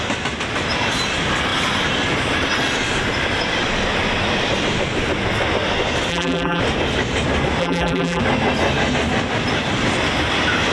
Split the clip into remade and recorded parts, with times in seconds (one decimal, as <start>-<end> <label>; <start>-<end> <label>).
0.0-6.1 recorded; 6.1-6.6 remade; 6.6-7.6 recorded; 7.6-8.2 remade; 8.2-10.7 recorded